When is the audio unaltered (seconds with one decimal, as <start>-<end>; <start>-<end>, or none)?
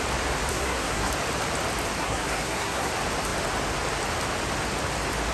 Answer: 0.0-0.5; 1.1-2.0; 2.9-5.3